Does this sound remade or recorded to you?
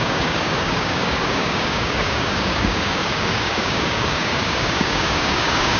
remade